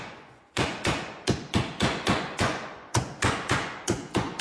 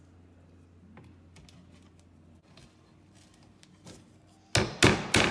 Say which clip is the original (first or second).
second